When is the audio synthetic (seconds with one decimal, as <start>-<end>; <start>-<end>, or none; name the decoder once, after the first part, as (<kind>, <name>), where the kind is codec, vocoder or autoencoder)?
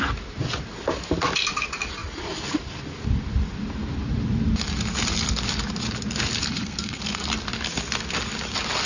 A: 6.4-7.0 (codec, SNAC)